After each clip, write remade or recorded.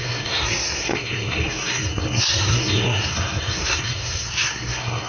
remade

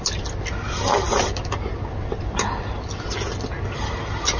recorded